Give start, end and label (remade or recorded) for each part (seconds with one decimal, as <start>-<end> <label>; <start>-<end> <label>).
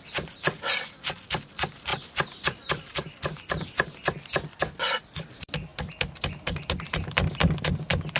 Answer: 0.0-8.2 recorded